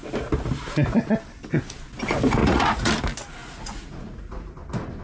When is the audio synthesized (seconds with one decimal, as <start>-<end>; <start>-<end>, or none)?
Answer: 2.4-2.9; 3.4-4.6

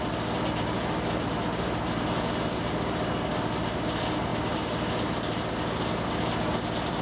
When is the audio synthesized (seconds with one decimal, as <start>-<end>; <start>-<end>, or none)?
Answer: none

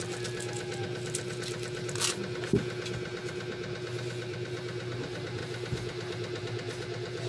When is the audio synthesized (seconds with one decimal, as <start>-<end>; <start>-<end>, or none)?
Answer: none

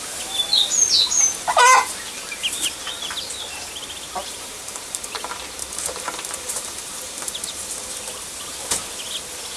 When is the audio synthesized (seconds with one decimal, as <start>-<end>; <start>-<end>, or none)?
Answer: 4.2-7.6

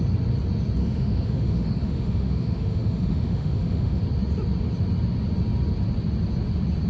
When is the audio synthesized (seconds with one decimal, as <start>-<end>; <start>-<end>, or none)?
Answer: 0.8-4.0

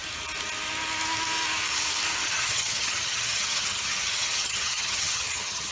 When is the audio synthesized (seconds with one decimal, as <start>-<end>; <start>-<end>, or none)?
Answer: 2.1-5.7

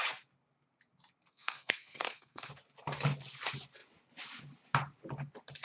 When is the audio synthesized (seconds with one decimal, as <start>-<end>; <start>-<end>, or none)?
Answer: 1.3-2.5